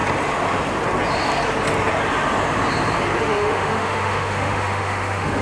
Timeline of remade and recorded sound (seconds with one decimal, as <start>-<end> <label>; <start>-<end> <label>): 0.0-3.2 recorded; 3.2-5.4 remade